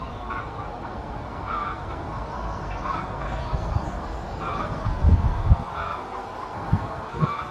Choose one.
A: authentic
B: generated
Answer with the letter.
B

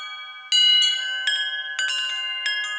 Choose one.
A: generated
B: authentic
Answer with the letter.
B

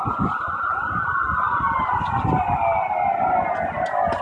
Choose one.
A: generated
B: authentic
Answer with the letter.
B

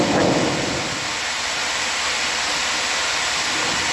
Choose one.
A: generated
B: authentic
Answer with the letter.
B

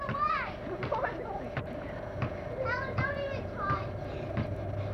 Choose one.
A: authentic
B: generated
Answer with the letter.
A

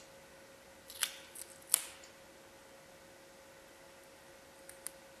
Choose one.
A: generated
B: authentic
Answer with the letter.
B